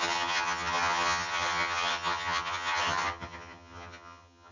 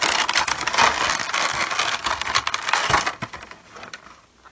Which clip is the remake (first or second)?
first